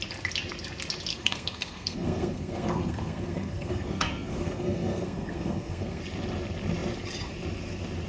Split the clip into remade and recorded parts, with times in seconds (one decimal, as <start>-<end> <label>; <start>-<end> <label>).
0.0-1.1 recorded; 1.1-6.0 remade; 6.0-8.1 recorded